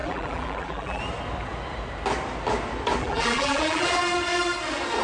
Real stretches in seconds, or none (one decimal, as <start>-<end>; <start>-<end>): 1.0-3.0; 4.0-5.0